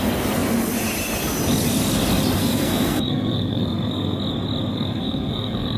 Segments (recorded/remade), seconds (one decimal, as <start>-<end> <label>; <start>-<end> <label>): 0.0-2.4 recorded; 2.4-4.2 remade; 4.2-4.7 recorded; 4.7-5.8 remade